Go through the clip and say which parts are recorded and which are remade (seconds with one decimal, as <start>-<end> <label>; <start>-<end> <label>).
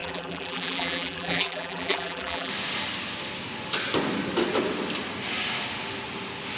0.0-2.5 remade; 2.5-6.6 recorded